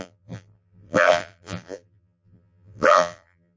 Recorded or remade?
remade